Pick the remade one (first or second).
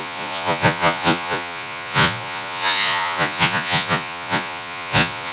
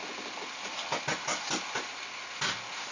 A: first